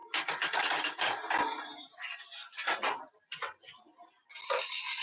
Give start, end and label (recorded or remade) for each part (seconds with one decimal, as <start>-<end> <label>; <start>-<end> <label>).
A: 0.0-5.0 recorded